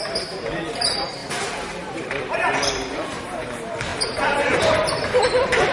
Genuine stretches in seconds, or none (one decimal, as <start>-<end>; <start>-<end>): none